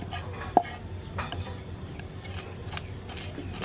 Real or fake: real